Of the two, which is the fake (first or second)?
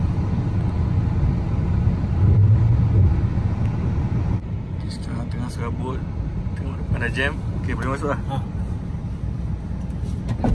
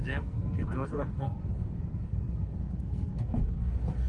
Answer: second